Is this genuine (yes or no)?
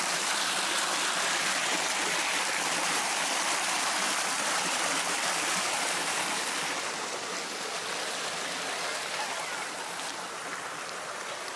yes